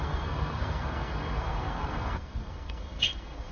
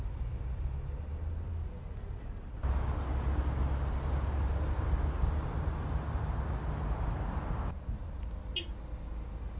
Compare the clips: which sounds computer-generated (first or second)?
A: first